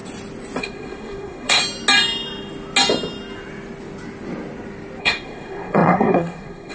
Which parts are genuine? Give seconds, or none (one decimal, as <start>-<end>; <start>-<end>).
0.0-0.6; 1.6-5.0